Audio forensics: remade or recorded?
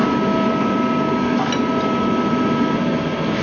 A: recorded